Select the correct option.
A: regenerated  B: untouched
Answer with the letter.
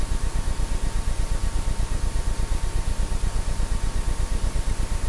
B